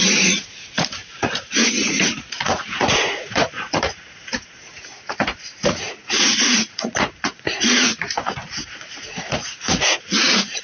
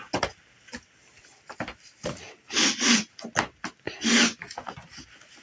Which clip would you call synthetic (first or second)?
first